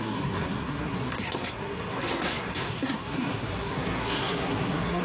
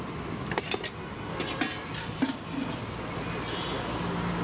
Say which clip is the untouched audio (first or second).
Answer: second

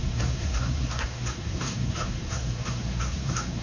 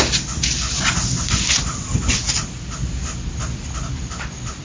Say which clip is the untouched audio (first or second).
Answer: second